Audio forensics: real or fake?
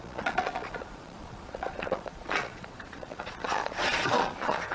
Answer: fake